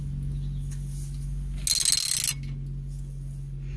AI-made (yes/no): no